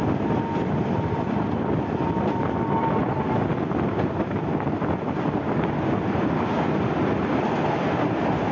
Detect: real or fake real